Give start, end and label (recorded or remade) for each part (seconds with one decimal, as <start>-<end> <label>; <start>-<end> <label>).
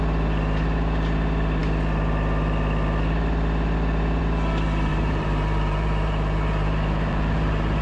0.0-4.9 recorded; 4.9-7.8 remade